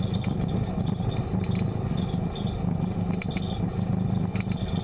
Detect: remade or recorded recorded